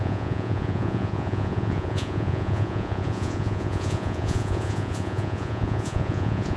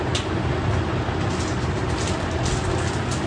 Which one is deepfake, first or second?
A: first